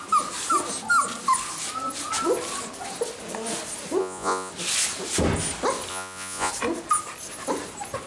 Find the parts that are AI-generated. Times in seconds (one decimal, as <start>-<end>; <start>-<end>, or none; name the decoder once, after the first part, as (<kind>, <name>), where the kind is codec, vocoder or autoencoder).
4.0-4.5 (vocoder, Vocos); 5.9-6.5